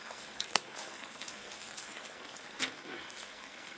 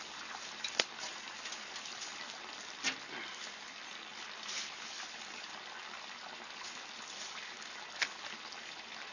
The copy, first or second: first